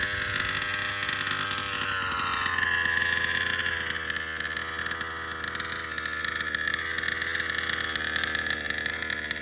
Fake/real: real